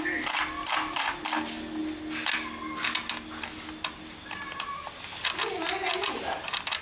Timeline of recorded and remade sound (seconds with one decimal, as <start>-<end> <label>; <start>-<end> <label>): 0.0-6.8 recorded